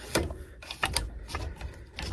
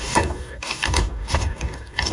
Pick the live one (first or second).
first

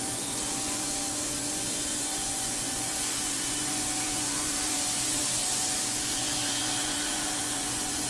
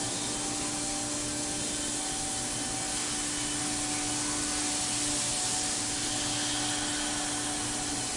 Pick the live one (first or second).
second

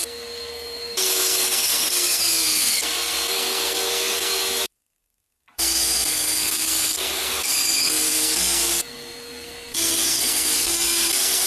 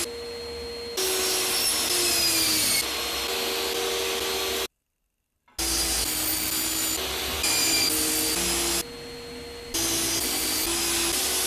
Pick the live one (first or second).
second